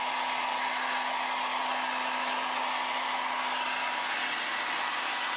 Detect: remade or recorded recorded